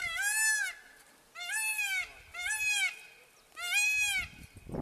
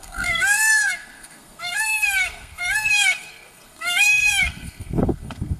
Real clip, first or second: first